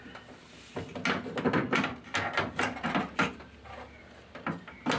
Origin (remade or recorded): recorded